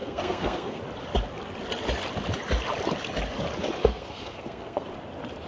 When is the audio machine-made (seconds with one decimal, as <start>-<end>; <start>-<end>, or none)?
0.0-0.8; 3.8-4.9

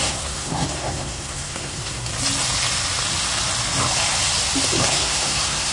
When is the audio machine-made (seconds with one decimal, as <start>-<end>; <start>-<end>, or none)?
0.0-2.1; 4.9-5.7

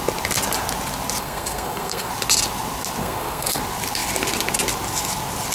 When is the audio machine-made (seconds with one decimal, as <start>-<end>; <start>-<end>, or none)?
1.2-2.1; 3.0-3.6

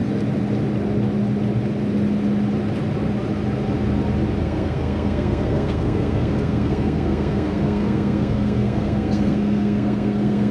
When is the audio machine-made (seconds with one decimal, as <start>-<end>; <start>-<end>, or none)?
4.4-10.5

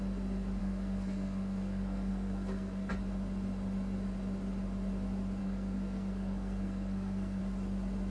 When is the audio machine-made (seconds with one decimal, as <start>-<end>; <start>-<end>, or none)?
0.6-2.9; 5.4-7.4

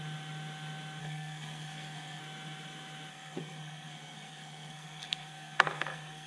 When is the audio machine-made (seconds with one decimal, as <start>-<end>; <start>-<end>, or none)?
1.0-2.2; 3.1-6.3

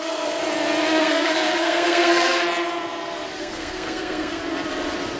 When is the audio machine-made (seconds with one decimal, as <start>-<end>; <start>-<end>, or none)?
0.0-0.4; 1.0-2.4; 3.4-4.4

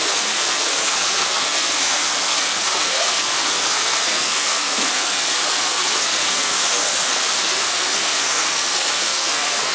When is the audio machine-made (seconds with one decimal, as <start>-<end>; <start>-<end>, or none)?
0.0-9.7